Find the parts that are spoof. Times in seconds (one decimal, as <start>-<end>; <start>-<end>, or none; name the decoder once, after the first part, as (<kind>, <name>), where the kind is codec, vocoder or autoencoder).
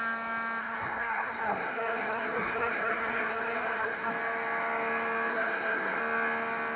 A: 0.6-4.1 (codec, SNAC); 5.3-6.0